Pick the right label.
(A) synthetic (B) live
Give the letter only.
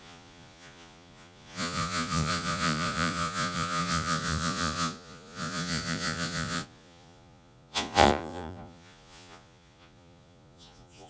A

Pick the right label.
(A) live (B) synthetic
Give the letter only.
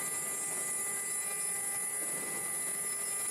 A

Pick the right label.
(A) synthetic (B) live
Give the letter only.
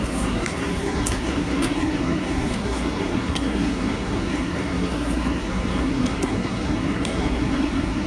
A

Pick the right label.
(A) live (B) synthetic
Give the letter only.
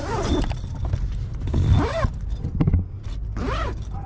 A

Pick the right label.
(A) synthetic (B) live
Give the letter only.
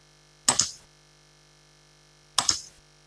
B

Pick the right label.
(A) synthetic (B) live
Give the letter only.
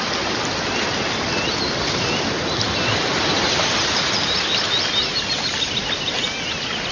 B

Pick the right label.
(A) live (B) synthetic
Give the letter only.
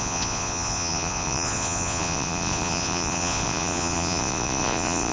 B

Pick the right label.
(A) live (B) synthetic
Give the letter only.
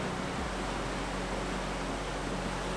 A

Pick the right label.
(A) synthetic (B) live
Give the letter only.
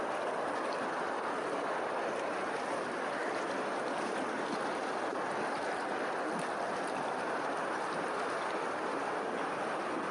B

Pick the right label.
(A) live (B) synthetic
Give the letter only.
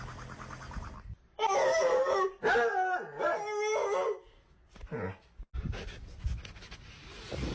A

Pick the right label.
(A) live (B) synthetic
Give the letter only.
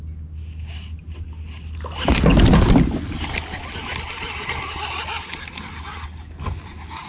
A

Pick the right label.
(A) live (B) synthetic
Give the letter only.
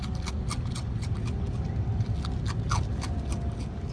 A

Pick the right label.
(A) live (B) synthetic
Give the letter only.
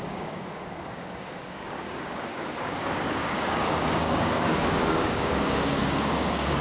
B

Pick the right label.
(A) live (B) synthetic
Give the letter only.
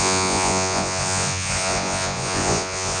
B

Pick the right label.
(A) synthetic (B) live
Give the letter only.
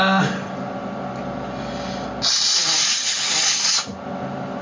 B